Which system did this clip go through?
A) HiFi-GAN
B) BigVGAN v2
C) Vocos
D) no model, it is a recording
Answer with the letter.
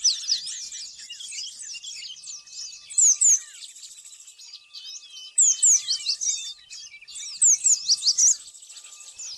D